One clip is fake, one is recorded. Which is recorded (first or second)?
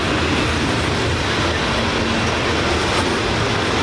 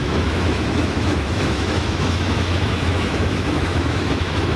first